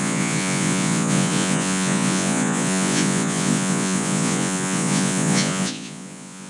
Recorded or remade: remade